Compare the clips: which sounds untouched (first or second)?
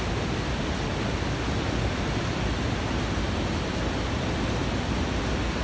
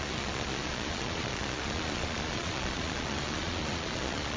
first